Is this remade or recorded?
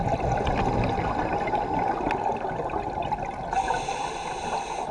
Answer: recorded